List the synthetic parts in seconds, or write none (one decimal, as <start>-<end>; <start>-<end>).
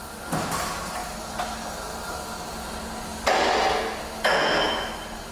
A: none